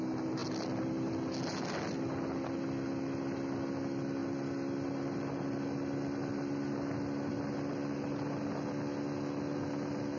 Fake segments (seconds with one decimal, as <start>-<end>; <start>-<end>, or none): none